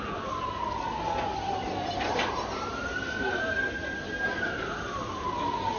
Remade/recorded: recorded